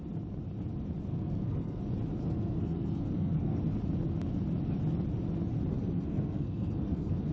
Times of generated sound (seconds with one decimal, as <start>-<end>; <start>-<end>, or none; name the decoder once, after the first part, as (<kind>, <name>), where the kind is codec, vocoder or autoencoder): 1.1-1.8 (codec, SNAC); 2.2-3.6; 5.7-7.3